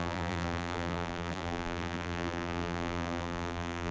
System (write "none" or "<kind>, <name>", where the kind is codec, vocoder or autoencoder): vocoder, BigVGAN v2